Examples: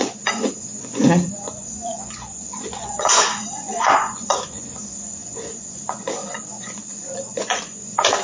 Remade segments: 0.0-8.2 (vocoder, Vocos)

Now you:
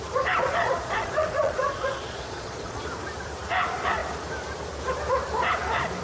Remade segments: 0.4-2.8 (vocoder, Vocos)

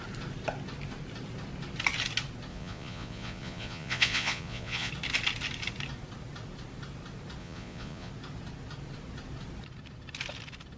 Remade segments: 2.5-4.9 (vocoder, Vocos); 7.4-8.1

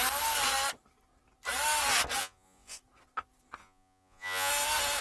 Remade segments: 2.2-2.8 (vocoder, Vocos); 3.6-4.5

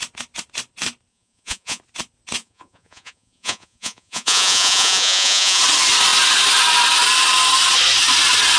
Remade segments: 1.1-1.8 (vocoder, Vocos); 2.4-5.6

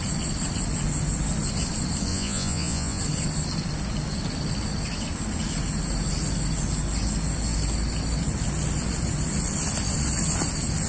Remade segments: 2.1-3.0 (vocoder, Vocos)

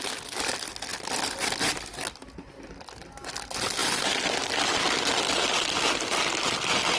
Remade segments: none

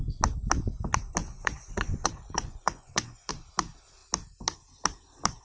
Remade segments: 1.2-3.3 (vocoder, Vocos)